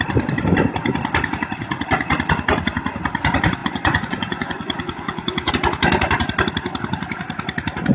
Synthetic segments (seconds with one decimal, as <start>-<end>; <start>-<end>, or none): 3.6-5.5

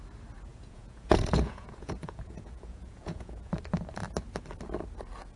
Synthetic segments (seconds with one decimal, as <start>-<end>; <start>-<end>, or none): 0.5-3.5

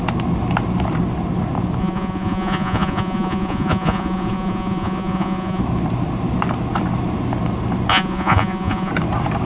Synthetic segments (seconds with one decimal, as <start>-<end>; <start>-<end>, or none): 1.8-5.6; 7.9-8.9

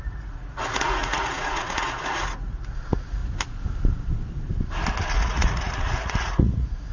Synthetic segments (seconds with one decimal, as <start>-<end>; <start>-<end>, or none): 0.0-3.2; 5.1-6.9

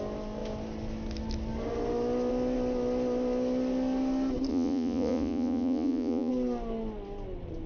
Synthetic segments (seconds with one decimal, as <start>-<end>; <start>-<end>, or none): 4.5-6.3